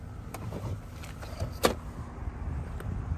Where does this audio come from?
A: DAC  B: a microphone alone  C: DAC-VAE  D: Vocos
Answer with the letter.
B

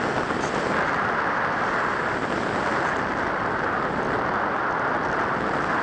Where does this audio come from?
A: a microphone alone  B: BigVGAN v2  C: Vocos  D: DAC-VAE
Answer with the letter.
A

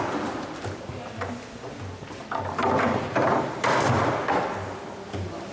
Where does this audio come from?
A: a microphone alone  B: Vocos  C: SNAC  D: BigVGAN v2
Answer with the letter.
A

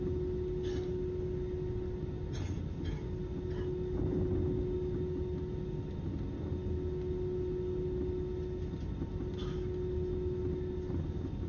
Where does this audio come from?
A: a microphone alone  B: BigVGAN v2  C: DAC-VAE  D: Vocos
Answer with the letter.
A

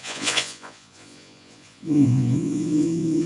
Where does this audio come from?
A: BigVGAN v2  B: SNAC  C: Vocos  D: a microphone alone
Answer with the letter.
C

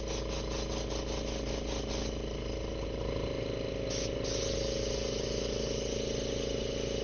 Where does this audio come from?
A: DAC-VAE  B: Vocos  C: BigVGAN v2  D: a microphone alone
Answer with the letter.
D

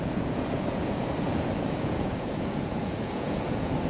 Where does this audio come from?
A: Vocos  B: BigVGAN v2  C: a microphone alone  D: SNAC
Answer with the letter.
A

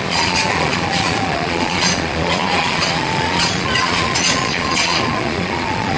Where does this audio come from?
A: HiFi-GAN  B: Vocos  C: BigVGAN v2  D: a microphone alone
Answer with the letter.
B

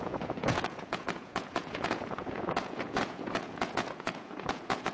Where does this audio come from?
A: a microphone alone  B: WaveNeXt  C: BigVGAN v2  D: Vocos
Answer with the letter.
D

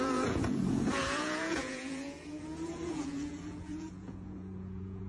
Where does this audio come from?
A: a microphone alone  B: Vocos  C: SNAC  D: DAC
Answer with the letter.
B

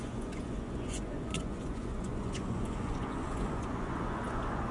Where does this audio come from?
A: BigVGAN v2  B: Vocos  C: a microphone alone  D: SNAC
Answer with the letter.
B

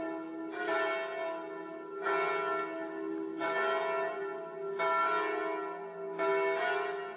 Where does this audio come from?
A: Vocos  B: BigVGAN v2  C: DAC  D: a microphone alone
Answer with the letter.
D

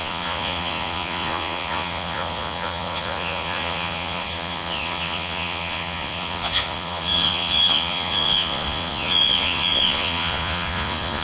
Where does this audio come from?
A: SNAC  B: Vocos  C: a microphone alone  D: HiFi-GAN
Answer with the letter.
B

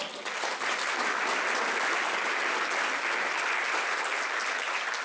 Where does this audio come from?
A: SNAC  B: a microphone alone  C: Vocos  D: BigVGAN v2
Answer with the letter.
B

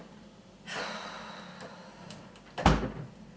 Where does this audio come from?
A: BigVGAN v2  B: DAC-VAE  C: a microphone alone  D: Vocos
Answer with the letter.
C